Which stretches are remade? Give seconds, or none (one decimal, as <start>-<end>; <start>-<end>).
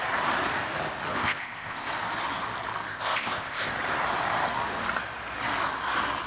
1.1-1.9; 2.9-3.7